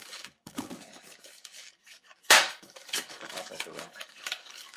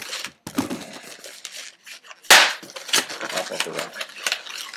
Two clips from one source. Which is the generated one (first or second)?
first